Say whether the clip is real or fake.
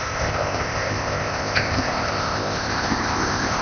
fake